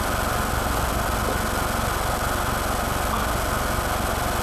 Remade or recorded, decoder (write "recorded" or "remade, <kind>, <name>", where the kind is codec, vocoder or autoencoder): recorded